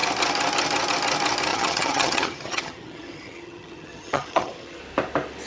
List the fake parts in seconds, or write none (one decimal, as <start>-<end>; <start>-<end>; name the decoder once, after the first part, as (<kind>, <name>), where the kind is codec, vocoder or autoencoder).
1.5-4.8 (vocoder, HiFi-GAN)